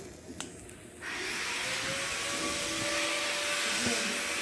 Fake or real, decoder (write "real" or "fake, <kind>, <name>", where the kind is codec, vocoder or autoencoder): real